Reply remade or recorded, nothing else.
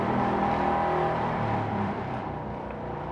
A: remade